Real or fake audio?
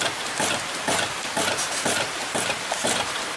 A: fake